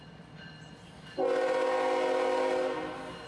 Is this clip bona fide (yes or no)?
yes